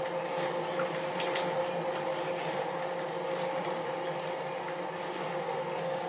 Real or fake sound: real